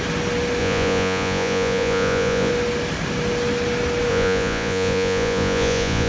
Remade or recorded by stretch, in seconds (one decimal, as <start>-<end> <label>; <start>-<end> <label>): 0.0-0.6 recorded; 0.6-2.5 remade; 2.5-4.1 recorded; 4.1-6.1 remade